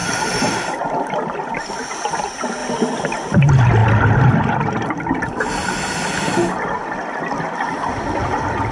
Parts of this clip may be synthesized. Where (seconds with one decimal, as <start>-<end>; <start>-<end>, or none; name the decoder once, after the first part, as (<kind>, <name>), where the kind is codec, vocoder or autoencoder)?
0.0-1.8 (vocoder, BigVGAN v2); 3.8-4.7